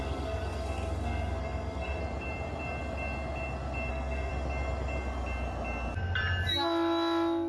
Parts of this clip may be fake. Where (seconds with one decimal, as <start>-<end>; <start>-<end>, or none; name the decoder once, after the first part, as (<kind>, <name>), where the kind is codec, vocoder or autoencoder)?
0.0-2.0 (codec, SNAC); 3.9-4.3